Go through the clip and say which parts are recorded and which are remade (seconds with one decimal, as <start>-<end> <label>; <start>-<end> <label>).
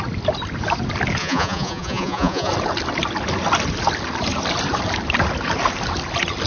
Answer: 0.0-1.2 recorded; 1.2-2.5 remade; 2.5-6.5 recorded